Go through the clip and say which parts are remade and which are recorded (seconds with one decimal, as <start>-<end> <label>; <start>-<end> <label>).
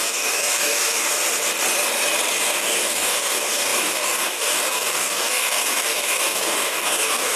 0.0-1.1 remade; 1.1-2.4 recorded; 2.4-7.4 remade